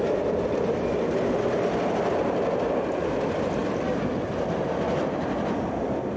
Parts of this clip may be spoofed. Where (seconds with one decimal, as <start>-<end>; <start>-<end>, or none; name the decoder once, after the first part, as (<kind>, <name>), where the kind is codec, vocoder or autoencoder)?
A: none